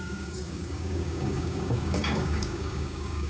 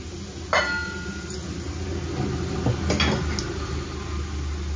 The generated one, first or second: first